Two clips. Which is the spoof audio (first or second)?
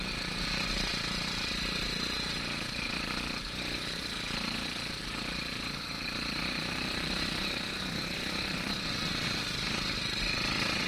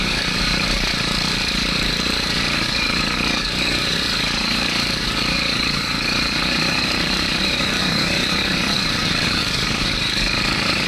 second